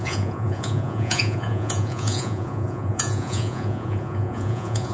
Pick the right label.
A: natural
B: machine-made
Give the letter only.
B